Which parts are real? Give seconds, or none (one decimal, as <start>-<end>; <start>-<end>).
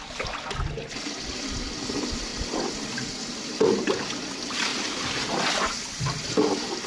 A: 0.0-6.9